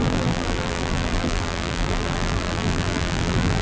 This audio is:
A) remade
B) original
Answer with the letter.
A